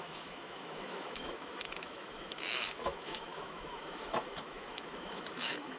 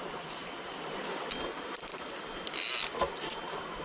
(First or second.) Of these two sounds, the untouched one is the second